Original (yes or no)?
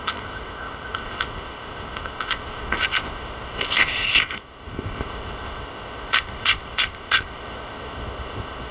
no